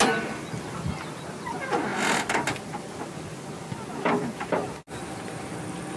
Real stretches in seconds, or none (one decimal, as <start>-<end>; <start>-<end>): 0.0-6.0